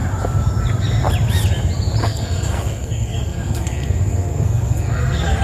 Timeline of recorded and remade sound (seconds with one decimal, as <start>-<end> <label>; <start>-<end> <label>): 0.0-2.0 recorded; 2.0-5.4 remade